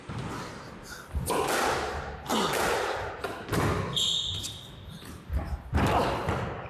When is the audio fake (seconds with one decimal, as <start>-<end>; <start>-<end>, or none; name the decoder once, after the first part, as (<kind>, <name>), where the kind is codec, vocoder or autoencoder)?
none